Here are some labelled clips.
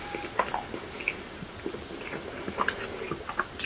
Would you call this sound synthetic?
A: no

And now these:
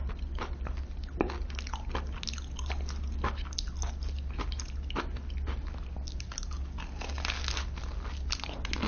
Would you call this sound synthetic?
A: no